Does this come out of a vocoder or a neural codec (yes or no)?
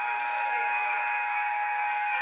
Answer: yes